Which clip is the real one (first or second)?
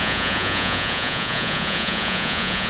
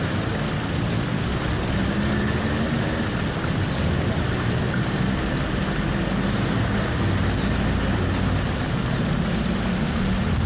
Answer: second